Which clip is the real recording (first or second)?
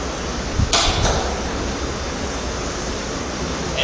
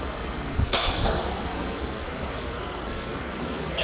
first